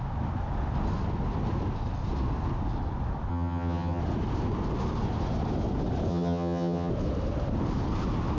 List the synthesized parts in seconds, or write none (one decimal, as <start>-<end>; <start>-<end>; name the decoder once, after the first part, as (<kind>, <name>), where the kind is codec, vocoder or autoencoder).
3.3-4.0 (vocoder, HiFi-GAN); 6.1-6.9